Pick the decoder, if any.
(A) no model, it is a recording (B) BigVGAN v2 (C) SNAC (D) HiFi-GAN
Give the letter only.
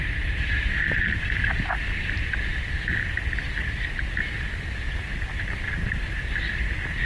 A